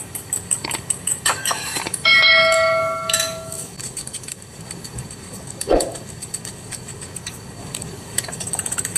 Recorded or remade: remade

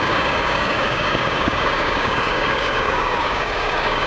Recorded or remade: remade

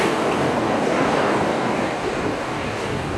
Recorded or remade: remade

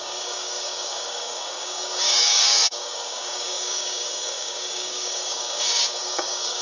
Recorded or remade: remade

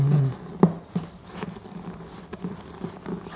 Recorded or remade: recorded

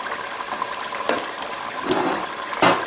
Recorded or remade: recorded